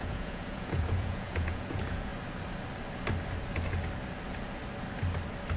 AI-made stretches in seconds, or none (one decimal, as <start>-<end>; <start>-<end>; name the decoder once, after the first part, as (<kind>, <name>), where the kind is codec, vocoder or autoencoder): 0.0-2.1 (vocoder, Vocos)